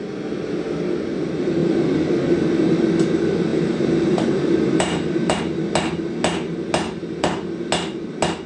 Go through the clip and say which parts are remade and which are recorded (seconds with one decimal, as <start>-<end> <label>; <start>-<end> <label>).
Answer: 0.0-3.5 recorded; 3.5-5.4 remade; 5.4-7.0 recorded; 7.0-7.7 remade; 7.7-8.5 recorded

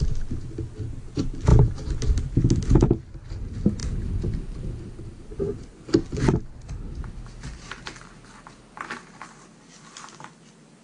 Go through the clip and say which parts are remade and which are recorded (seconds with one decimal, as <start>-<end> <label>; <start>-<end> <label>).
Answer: 0.0-10.8 recorded

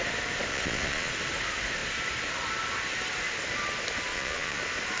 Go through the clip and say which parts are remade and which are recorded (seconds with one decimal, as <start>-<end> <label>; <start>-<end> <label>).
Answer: 0.0-0.5 recorded; 0.5-1.1 remade; 1.1-4.1 recorded; 4.1-4.6 remade; 4.6-5.0 recorded

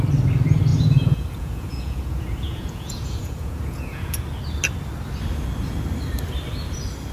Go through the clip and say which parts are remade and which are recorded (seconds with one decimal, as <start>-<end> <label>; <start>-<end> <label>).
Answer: 0.0-0.7 recorded; 0.7-4.1 remade; 4.1-7.1 recorded

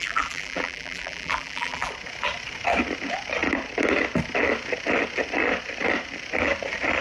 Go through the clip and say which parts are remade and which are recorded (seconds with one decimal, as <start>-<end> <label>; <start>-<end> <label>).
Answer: 0.0-1.9 remade; 1.9-7.0 recorded

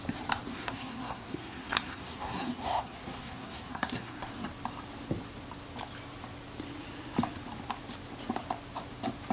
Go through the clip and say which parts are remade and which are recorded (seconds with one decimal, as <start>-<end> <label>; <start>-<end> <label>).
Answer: 0.0-0.5 recorded; 0.5-4.3 remade; 4.3-9.3 recorded